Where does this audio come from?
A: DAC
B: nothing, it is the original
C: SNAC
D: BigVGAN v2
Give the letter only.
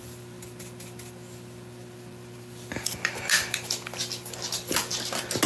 B